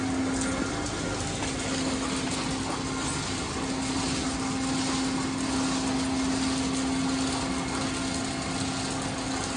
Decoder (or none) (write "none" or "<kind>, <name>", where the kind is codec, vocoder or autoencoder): none